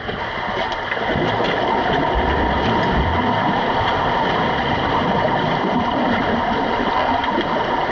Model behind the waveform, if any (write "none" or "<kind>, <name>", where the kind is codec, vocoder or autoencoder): none